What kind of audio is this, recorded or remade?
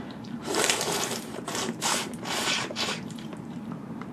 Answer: remade